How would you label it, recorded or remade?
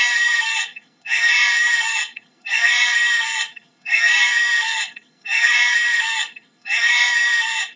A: remade